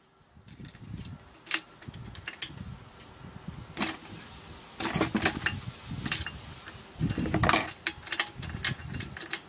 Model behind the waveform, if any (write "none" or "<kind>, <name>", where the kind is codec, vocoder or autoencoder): none